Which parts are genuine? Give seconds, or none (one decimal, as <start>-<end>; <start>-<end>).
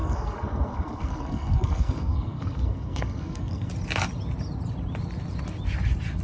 3.7-6.2